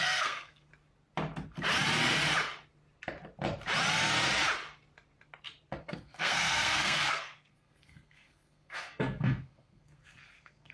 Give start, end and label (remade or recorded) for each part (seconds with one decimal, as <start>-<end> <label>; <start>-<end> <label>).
0.0-0.7 remade; 0.7-5.8 recorded; 5.8-10.7 remade

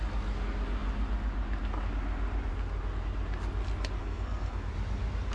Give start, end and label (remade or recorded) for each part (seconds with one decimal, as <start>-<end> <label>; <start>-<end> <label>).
0.0-4.0 recorded; 4.0-4.7 remade; 4.7-5.3 recorded

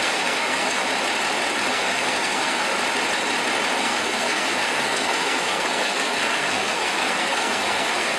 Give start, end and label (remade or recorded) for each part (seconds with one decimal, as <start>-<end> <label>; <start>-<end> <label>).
0.0-0.8 remade; 0.8-1.7 recorded; 1.7-2.7 remade; 2.7-3.8 recorded; 3.8-8.2 remade

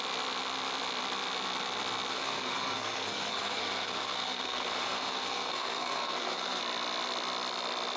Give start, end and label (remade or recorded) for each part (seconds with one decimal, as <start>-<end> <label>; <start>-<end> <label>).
0.0-2.1 recorded; 2.1-6.6 remade; 6.6-8.0 recorded

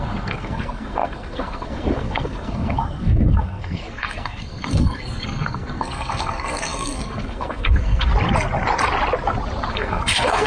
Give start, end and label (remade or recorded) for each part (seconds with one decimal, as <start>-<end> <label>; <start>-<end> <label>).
0.0-8.1 remade; 8.1-9.7 recorded; 9.7-10.5 remade

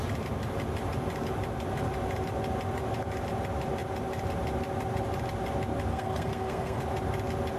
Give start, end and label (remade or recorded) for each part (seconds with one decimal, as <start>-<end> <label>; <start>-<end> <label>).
0.0-5.9 recorded; 5.9-6.8 remade; 6.8-7.6 recorded